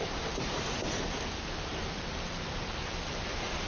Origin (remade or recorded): remade